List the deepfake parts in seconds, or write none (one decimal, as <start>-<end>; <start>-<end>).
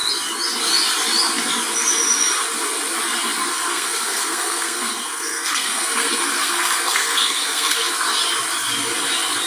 3.5-7.9